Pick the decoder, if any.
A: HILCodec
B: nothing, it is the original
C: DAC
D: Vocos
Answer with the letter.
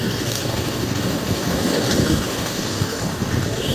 C